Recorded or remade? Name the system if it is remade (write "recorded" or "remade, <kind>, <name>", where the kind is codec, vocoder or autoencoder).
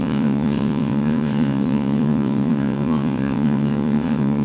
remade, vocoder, WaveNeXt